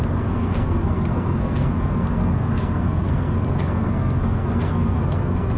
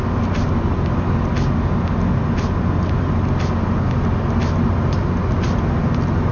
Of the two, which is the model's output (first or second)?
first